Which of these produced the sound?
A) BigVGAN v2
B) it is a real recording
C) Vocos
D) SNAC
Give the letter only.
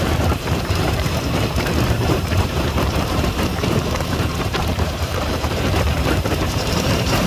A